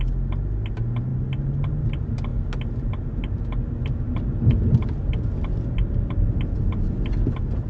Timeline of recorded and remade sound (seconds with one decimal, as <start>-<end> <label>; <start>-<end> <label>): 0.0-7.7 recorded